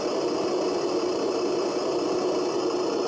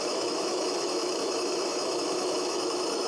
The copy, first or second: second